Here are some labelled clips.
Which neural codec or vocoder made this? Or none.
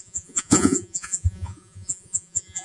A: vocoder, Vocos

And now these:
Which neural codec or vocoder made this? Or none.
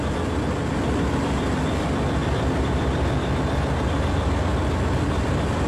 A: none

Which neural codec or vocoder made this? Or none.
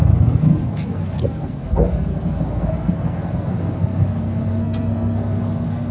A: codec, SNAC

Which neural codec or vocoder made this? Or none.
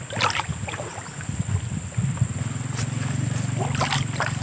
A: none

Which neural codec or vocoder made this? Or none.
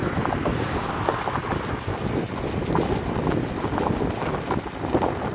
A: none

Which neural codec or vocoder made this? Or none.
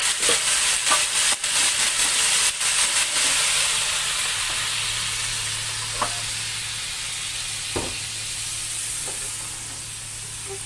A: none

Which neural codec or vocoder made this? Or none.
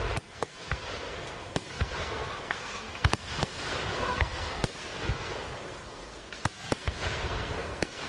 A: codec, SNAC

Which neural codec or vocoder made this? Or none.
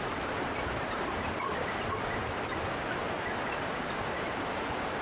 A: none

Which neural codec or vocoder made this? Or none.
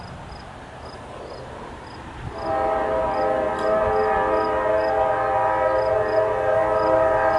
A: none